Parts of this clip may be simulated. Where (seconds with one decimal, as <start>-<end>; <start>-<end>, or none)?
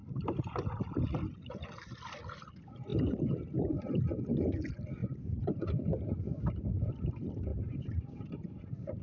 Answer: 2.9-4.0; 5.0-6.4; 7.5-9.0